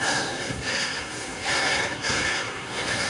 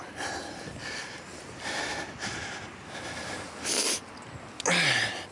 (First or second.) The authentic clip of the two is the second